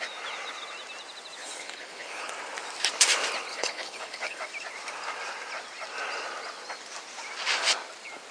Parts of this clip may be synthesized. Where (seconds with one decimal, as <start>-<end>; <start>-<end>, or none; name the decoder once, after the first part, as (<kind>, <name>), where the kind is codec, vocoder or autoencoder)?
1.4-2.3 (codec, HILCodec); 3.5-4.4